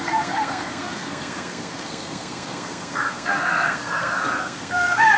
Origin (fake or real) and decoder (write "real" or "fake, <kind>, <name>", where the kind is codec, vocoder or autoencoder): fake, codec, SNAC